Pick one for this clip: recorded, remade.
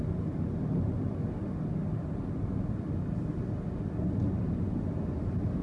recorded